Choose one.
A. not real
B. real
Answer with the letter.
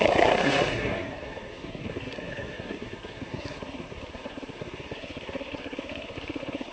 A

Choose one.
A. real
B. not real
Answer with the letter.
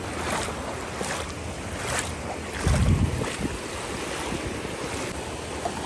A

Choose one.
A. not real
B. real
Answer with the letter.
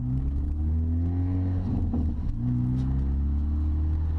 B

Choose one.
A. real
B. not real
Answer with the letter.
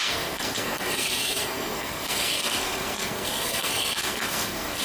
B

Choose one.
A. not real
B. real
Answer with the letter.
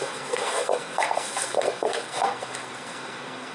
A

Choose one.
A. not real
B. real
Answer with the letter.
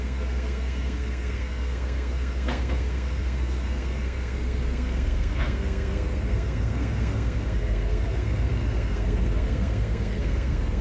A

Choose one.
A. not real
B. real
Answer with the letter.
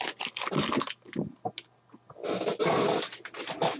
B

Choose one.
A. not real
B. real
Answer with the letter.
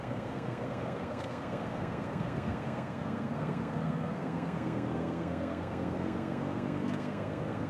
A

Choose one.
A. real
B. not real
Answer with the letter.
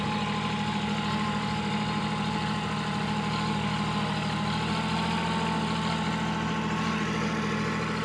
A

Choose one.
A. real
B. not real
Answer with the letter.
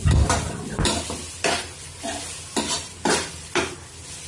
A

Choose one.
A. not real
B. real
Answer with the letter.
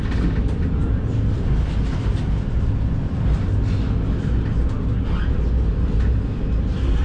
B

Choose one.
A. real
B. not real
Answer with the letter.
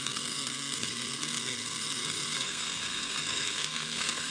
B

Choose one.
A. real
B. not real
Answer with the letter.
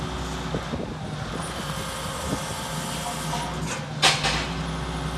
A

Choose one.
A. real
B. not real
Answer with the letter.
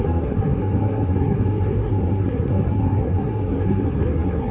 B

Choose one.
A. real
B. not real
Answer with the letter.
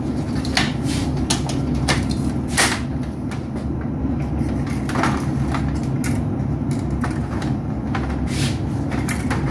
A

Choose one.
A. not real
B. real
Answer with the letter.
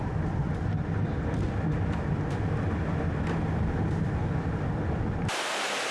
B